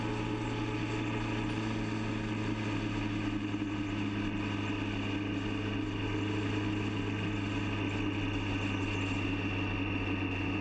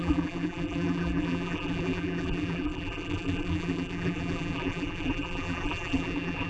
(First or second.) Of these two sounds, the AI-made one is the second